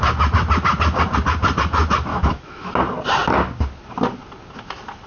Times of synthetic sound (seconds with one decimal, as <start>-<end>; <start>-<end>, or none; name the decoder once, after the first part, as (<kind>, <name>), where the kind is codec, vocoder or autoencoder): 2.1-2.7 (autoencoder, DAC-VAE)